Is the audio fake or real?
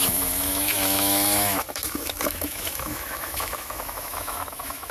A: fake